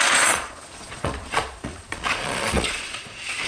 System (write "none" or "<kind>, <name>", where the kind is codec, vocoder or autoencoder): vocoder, Vocos